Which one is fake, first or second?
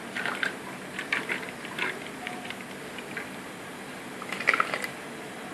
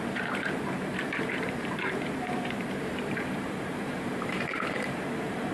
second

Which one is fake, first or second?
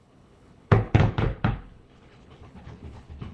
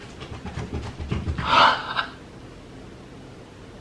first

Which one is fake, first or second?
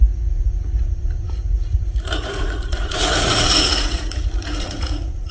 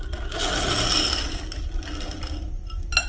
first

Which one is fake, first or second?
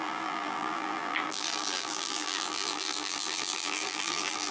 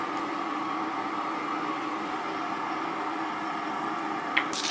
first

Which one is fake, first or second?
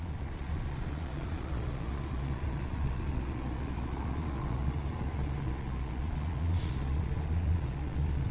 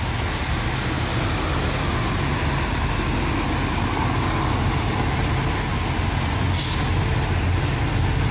first